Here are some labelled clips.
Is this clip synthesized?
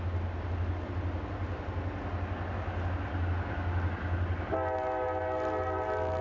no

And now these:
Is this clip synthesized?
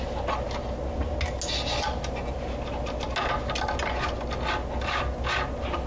no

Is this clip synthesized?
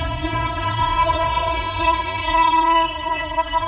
yes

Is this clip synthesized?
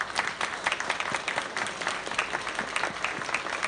no